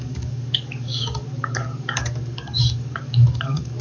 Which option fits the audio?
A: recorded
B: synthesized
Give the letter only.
B